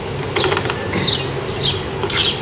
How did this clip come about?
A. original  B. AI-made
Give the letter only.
A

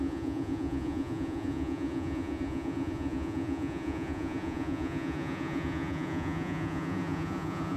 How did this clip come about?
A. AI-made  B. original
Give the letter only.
A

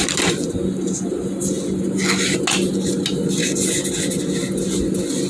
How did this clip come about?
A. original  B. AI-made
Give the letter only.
A